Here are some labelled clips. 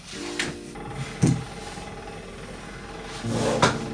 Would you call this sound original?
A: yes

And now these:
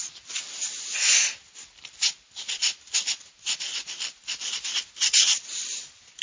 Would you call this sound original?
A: yes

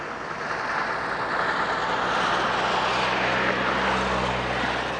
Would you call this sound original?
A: yes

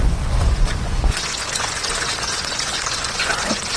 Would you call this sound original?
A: no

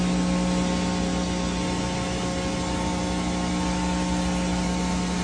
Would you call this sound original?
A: yes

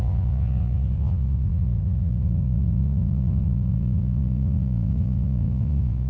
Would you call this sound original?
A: no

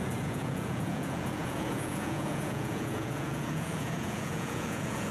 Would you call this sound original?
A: no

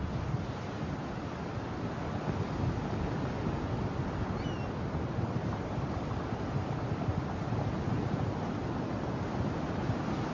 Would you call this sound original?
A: yes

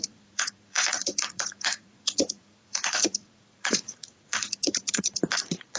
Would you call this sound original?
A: no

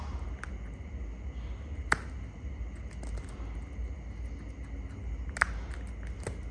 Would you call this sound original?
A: yes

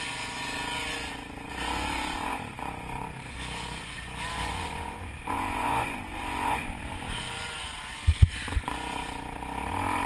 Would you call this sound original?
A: no